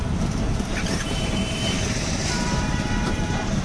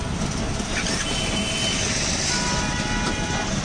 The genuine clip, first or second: second